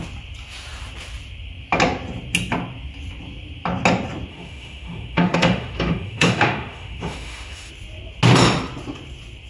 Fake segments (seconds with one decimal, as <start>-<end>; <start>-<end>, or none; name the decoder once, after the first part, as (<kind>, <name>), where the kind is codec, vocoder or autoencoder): 4.3-7.7 (autoencoder, DAC-VAE)